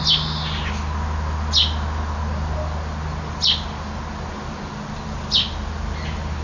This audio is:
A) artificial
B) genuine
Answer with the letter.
B